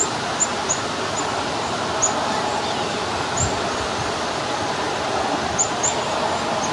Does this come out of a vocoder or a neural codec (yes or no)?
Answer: no